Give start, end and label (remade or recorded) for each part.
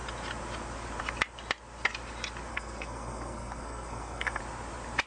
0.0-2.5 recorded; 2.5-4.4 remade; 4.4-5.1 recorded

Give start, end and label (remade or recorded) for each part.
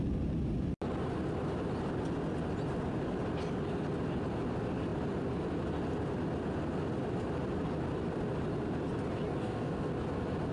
0.0-9.3 recorded; 9.3-9.9 remade; 9.9-10.5 recorded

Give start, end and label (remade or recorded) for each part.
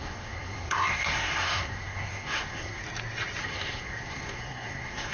0.0-2.8 remade; 2.8-3.4 recorded; 3.4-5.1 remade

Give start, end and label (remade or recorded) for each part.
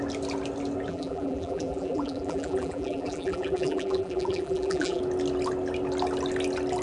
0.0-0.9 recorded; 0.9-5.0 remade; 5.0-6.8 recorded